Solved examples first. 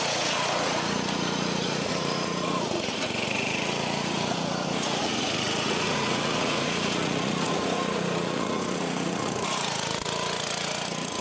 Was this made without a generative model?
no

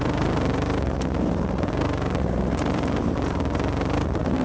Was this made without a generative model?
no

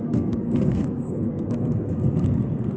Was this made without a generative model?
no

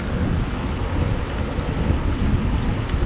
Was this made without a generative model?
yes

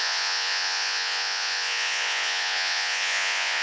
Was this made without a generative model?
no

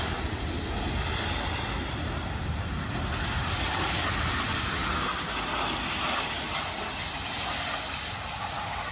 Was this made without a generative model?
yes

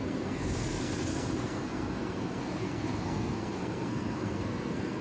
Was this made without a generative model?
no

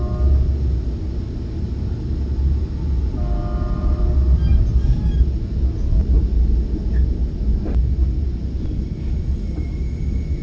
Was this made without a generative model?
yes